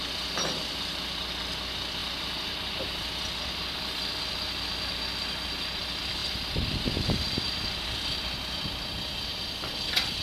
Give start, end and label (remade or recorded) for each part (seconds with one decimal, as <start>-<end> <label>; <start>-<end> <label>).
0.0-6.2 recorded; 6.2-8.7 remade; 8.7-10.2 recorded